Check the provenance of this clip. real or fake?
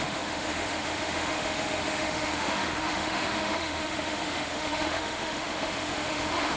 fake